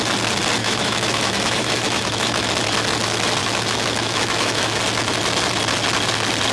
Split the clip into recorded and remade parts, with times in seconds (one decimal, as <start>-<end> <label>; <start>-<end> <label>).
0.0-0.6 recorded; 0.6-2.5 remade; 2.5-3.4 recorded; 3.4-4.8 remade; 4.8-6.5 recorded